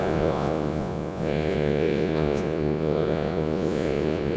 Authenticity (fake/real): fake